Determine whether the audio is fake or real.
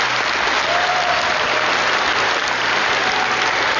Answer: real